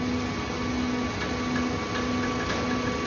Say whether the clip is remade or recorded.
recorded